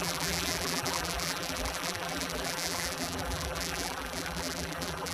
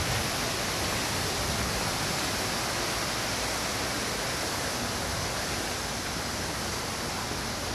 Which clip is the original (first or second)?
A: second